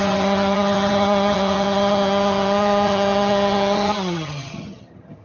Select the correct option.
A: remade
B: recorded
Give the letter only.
A